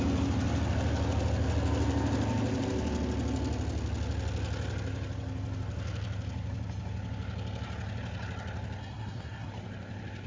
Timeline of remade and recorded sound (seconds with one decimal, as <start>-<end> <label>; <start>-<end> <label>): 0.0-8.8 recorded; 8.8-9.5 remade; 9.5-10.3 recorded